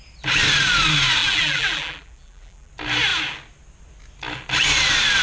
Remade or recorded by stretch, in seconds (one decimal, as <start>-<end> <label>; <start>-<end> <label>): 0.0-1.2 recorded; 1.2-2.7 remade; 2.7-5.2 recorded